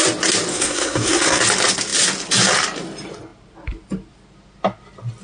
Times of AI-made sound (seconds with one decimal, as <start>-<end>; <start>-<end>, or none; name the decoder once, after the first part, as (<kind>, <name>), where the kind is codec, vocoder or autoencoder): 0.5-1.4 (codec, SNAC)